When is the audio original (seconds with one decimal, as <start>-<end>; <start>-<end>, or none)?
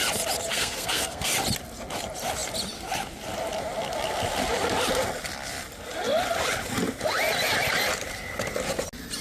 0.0-0.5; 1.3-9.2